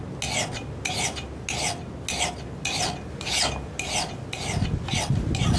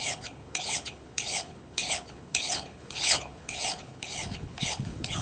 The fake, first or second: second